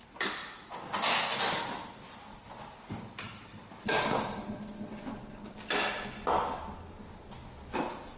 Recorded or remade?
recorded